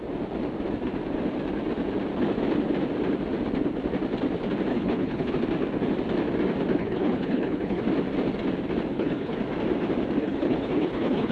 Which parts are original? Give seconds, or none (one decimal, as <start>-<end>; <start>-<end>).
0.0-4.7; 5.3-6.8; 7.8-8.9; 9.4-10.2